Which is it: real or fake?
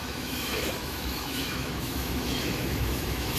fake